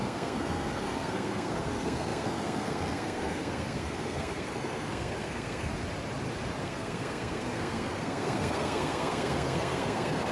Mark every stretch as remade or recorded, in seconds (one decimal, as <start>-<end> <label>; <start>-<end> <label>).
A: 0.0-5.7 remade; 5.7-6.6 recorded; 6.6-10.3 remade